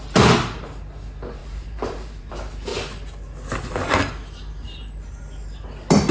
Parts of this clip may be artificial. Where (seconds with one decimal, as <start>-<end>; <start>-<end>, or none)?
1.4-2.3